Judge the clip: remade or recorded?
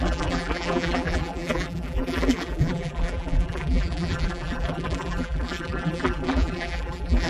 remade